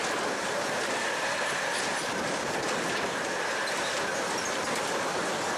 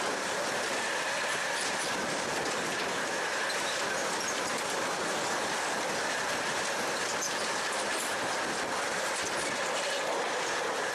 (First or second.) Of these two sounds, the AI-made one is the first